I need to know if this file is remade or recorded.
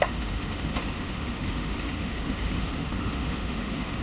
remade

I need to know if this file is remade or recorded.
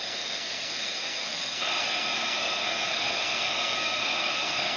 remade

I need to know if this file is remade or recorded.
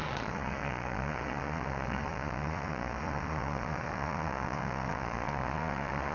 remade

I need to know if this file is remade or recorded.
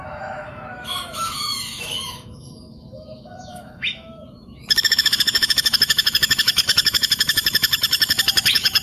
remade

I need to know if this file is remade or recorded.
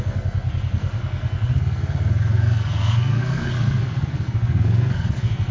remade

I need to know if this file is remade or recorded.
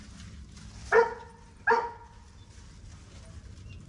recorded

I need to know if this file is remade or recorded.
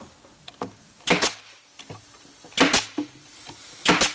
recorded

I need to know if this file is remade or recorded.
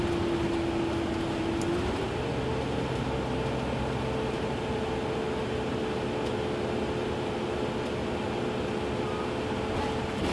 recorded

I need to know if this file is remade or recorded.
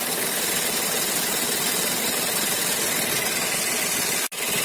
recorded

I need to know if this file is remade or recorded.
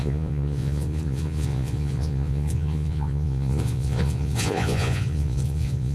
remade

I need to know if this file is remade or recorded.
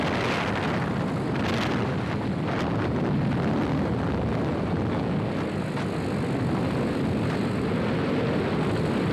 recorded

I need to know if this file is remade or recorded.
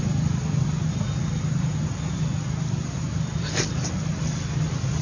recorded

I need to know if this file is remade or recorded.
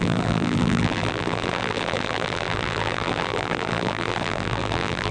remade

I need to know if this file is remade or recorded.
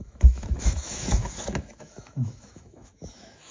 remade